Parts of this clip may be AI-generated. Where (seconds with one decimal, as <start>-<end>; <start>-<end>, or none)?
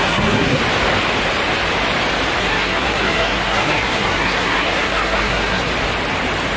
0.0-0.6; 2.4-5.7